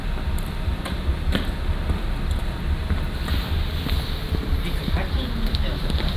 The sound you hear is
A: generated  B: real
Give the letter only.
B